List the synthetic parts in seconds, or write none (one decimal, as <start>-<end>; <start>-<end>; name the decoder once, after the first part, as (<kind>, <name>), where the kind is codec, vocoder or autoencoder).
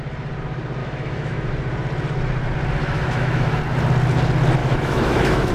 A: 0.8-1.5 (autoencoder, DAC-VAE); 2.8-3.6; 4.6-5.5